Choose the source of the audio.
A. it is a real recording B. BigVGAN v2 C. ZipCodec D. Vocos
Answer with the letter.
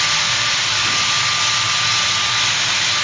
A